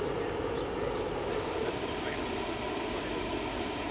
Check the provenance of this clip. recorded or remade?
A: remade